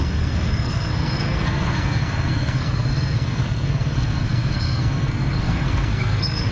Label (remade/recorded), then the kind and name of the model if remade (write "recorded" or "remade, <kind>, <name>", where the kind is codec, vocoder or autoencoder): remade, codec, SNAC